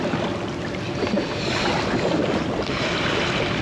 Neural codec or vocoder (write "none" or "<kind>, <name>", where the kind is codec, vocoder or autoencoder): none